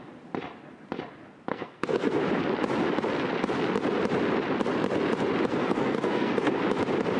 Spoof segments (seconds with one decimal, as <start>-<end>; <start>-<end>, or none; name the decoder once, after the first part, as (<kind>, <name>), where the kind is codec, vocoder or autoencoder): 1.5-2.2 (codec, SNAC); 5.5-6.6